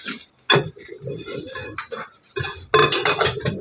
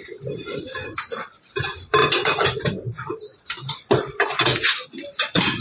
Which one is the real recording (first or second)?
first